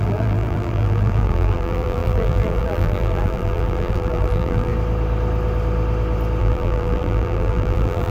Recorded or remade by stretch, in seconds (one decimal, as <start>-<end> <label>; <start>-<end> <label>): 0.0-4.7 remade; 4.7-6.4 recorded; 6.4-8.1 remade